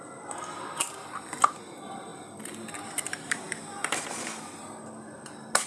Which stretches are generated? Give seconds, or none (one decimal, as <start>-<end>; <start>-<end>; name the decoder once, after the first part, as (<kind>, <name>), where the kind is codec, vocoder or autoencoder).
none